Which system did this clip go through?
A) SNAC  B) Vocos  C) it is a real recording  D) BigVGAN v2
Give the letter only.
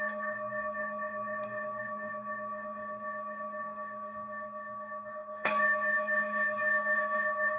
A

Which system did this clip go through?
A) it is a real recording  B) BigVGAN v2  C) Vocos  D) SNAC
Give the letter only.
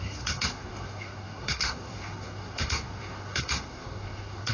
D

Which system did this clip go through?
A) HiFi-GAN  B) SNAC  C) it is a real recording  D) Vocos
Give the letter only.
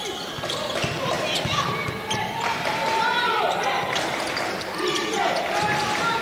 C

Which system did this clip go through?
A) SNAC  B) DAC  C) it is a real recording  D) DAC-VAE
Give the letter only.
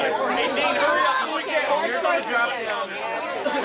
C